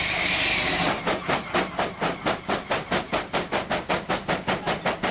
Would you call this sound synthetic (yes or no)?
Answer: no